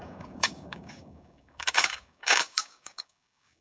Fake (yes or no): yes